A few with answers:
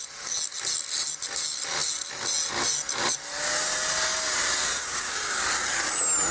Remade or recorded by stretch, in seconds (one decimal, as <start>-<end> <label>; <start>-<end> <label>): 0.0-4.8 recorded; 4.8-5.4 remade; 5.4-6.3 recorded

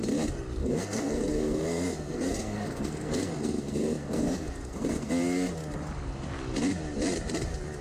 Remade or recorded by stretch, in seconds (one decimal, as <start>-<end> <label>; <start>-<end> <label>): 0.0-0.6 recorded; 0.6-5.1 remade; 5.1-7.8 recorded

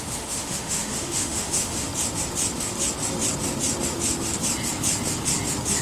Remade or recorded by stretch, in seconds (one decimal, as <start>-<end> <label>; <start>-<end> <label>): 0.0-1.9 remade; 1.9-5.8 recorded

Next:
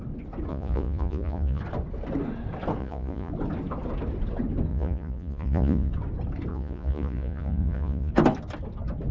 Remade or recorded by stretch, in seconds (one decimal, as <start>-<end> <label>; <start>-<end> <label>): 0.0-0.5 recorded; 0.5-1.6 remade; 1.6-2.8 recorded; 2.8-3.3 remade; 3.3-4.7 recorded; 4.7-5.9 remade; 5.9-6.5 recorded; 6.5-8.1 remade; 8.1-9.1 recorded

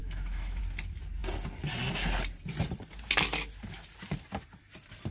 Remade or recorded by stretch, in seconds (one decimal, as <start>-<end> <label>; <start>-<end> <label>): 0.0-0.6 remade; 0.6-5.1 recorded